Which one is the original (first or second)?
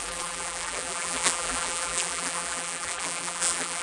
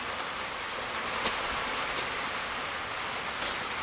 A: second